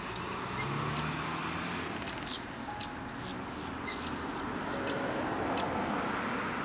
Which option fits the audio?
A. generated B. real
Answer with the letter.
B